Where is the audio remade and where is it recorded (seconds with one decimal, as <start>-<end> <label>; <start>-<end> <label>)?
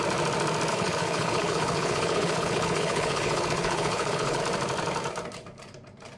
0.0-0.7 recorded; 0.7-4.4 remade; 4.4-6.2 recorded